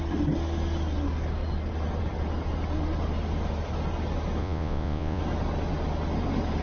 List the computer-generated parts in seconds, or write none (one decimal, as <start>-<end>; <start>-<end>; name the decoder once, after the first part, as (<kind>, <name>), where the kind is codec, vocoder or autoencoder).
4.4-5.2 (vocoder, Vocos)